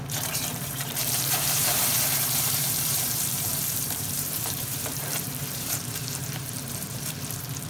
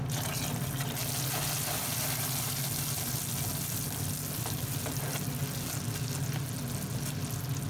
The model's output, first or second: first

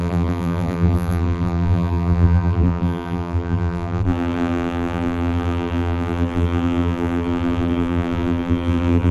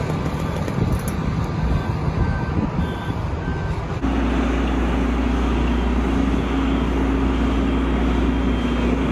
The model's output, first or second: first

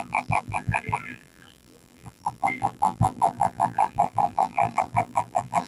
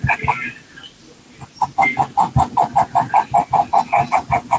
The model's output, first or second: first